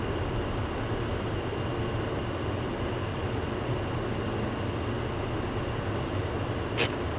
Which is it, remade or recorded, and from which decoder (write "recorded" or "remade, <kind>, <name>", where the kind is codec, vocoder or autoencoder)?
recorded